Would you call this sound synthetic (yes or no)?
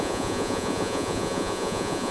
yes